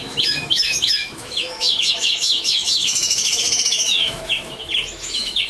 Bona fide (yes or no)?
no